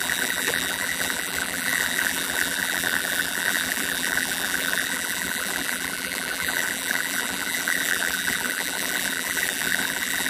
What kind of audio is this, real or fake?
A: fake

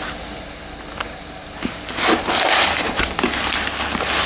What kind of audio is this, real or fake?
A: real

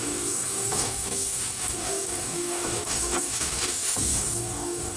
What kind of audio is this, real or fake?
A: fake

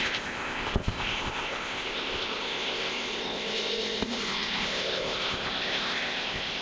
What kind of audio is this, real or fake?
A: fake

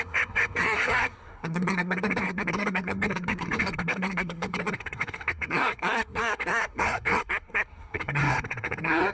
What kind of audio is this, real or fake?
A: fake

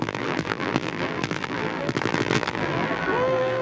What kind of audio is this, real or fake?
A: fake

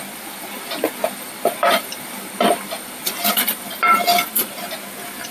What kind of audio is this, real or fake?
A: real